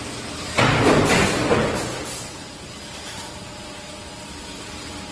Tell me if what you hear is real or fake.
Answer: real